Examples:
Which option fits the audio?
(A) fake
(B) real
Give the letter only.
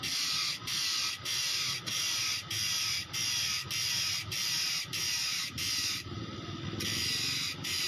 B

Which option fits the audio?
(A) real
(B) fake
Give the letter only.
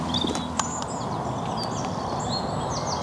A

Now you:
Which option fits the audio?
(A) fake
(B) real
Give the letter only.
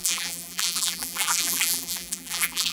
A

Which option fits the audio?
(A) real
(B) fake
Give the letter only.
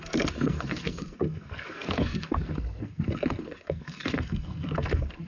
B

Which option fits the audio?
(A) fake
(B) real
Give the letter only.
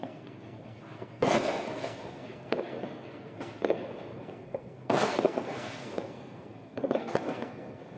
A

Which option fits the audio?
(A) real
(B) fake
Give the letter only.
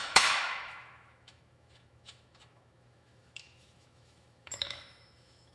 B